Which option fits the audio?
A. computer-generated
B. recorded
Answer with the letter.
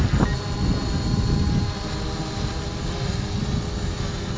B